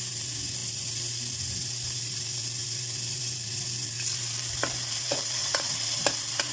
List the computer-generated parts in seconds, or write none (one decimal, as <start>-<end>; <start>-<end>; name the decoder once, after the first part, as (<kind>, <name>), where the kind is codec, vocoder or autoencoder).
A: 5.4-6.0 (vocoder, WaveNeXt)